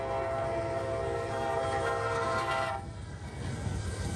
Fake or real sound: fake